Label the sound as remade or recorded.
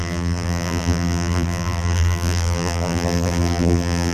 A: remade